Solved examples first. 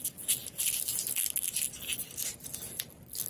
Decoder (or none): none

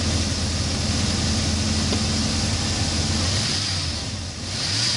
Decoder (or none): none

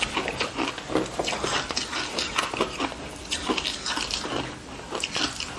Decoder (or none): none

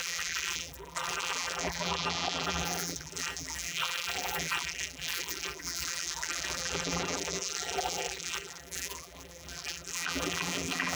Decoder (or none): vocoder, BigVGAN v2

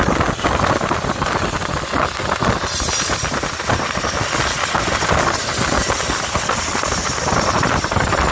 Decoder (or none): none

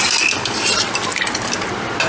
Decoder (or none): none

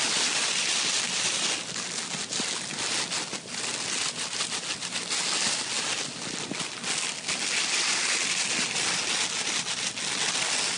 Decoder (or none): none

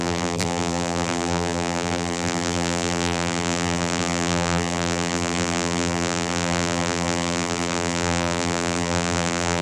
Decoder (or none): vocoder, BigVGAN v2